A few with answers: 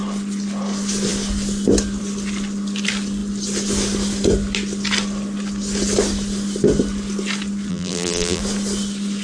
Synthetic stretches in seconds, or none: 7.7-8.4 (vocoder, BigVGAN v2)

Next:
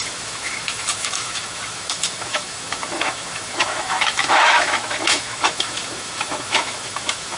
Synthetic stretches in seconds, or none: 0.0-7.4 (autoencoder, DAC-VAE)